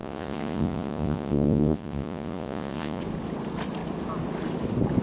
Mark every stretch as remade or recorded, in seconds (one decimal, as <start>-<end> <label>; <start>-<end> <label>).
0.0-3.0 remade; 3.0-5.0 recorded

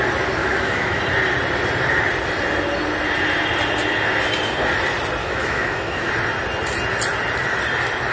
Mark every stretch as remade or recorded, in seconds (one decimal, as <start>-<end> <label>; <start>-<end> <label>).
0.0-0.4 recorded; 0.4-1.0 remade; 1.0-5.2 recorded; 5.2-6.1 remade; 6.1-8.1 recorded

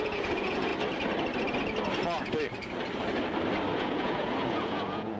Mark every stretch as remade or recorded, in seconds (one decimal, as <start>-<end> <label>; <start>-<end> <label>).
0.0-0.7 remade; 0.7-3.8 recorded; 3.8-5.2 remade

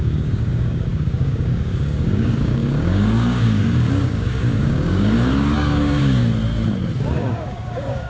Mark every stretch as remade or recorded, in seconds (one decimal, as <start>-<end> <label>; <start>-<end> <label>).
0.0-6.2 remade; 6.2-7.1 recorded; 7.1-8.1 remade

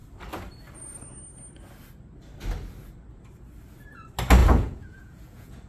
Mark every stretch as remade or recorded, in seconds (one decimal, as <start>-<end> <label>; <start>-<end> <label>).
0.0-4.4 recorded; 4.4-5.7 remade

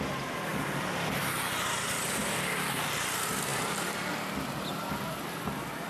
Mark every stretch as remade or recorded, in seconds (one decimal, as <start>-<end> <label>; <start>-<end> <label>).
0.0-0.5 recorded; 0.5-1.4 remade; 1.4-2.2 recorded; 2.2-2.7 remade; 2.7-3.5 recorded; 3.5-4.1 remade; 4.1-5.9 recorded